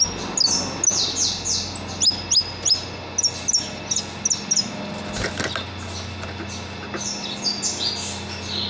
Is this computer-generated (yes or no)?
no